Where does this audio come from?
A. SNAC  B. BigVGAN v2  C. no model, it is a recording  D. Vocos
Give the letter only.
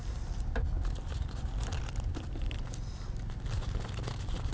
C